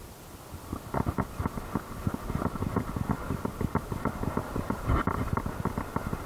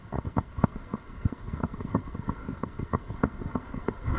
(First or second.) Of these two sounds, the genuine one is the first